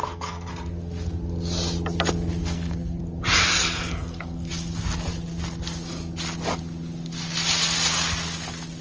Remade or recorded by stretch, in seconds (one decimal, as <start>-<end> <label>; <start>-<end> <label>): 0.0-0.5 remade; 0.5-2.4 recorded; 2.4-3.0 remade; 3.0-3.6 recorded; 3.6-4.5 remade; 4.5-8.8 recorded